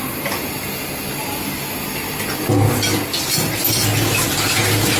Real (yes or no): yes